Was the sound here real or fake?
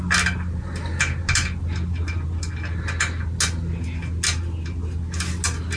real